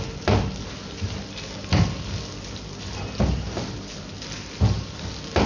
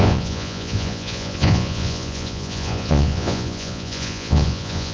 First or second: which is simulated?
second